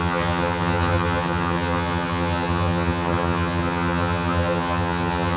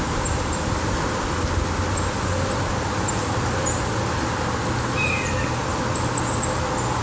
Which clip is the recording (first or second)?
second